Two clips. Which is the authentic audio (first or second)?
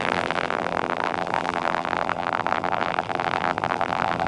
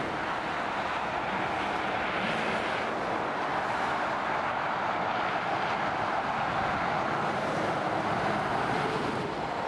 second